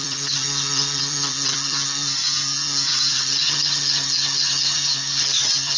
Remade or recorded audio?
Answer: remade